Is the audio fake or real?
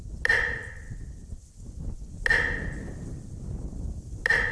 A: real